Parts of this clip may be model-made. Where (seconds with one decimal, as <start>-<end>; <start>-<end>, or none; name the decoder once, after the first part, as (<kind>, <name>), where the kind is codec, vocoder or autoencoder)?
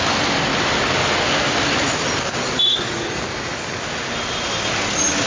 2.7-3.8 (codec, DAC)